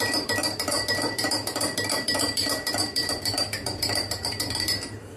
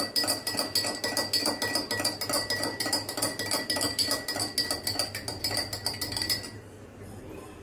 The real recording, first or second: second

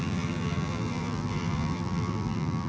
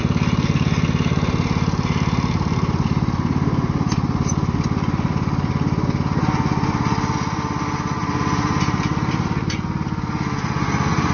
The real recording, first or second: second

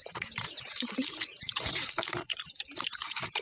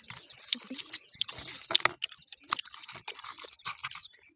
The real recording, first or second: second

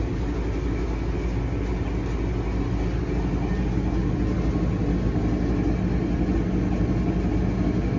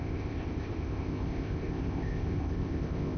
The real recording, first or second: first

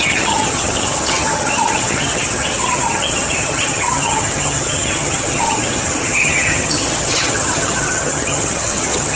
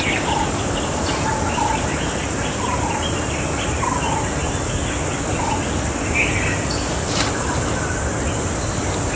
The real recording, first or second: second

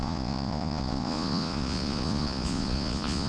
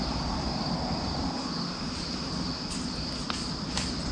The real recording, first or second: second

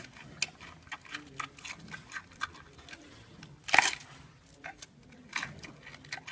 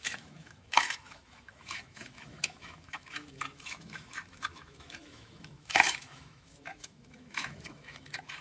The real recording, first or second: first